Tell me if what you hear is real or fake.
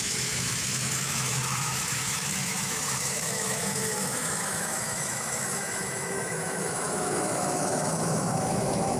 fake